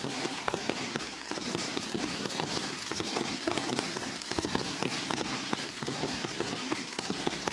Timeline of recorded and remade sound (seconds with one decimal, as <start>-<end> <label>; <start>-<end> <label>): 0.0-7.5 remade